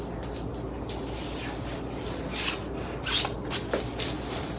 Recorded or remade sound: recorded